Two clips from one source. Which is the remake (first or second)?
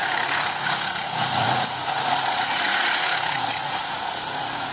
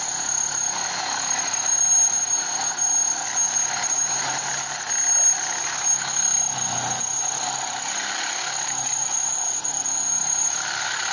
first